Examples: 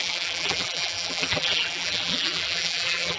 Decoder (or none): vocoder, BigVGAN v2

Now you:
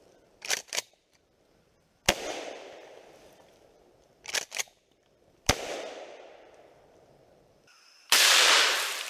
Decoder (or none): vocoder, BigVGAN v2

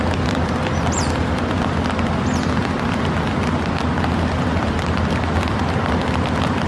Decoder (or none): vocoder, BigVGAN v2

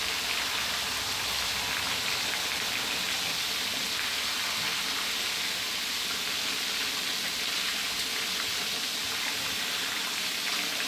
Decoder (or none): none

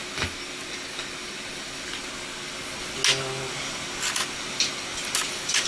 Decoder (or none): none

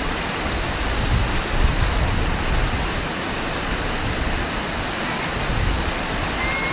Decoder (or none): none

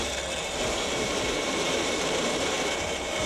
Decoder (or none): vocoder, BigVGAN v2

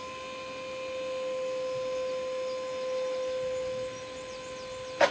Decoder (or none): none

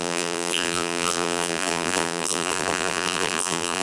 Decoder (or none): vocoder, BigVGAN v2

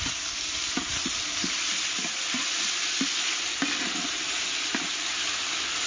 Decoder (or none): vocoder, BigVGAN v2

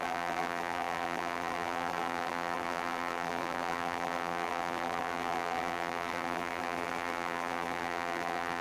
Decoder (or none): vocoder, BigVGAN v2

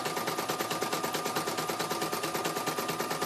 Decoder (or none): none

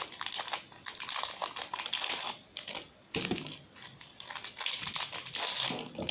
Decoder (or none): none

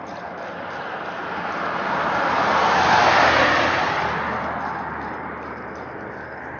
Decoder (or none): none